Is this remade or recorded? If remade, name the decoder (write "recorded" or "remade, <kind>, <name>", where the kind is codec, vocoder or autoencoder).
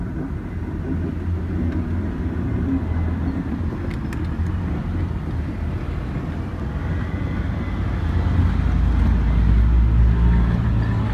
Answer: recorded